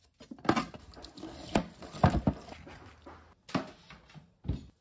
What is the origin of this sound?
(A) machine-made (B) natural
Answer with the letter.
B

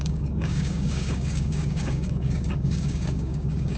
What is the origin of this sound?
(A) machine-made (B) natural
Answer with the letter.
A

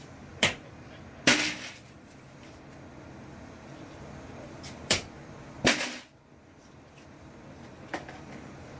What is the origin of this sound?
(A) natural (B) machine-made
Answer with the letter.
B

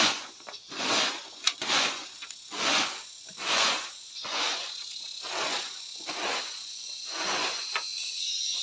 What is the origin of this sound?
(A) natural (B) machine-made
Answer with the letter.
B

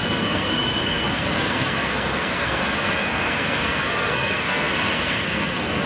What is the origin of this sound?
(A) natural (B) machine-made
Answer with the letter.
B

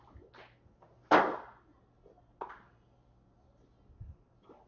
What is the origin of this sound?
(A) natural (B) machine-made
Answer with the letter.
A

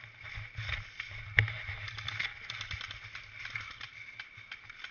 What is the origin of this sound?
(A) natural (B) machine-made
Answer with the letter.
A